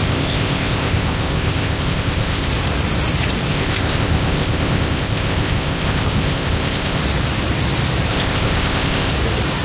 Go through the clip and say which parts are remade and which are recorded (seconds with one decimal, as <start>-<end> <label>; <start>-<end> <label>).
0.0-2.5 remade; 2.5-3.5 recorded; 3.5-7.0 remade; 7.0-8.1 recorded; 8.1-9.1 remade; 9.1-9.6 recorded